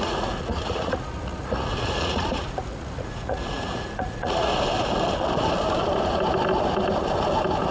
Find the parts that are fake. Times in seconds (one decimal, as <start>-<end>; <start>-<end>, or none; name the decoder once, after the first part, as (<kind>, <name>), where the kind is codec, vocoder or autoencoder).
0.0-4.5 (vocoder, Vocos)